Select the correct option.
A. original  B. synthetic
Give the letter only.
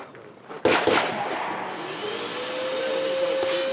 A